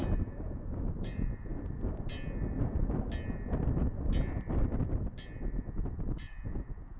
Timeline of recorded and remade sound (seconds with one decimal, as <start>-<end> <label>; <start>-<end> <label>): 0.0-1.5 remade; 1.5-5.7 recorded; 5.7-7.0 remade